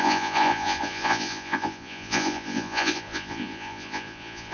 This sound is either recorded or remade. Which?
remade